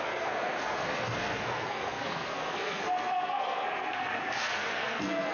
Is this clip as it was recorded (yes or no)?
no